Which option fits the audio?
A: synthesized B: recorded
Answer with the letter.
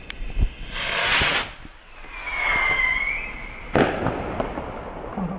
B